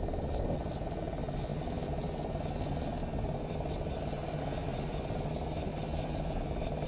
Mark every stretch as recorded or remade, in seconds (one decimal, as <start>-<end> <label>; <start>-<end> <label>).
0.0-6.9 recorded